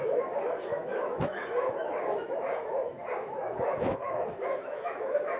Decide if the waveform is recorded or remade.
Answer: remade